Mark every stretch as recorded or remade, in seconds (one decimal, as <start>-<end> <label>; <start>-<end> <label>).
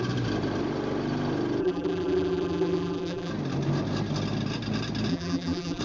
0.0-1.6 recorded; 1.6-3.3 remade; 3.3-5.1 recorded; 5.1-5.8 remade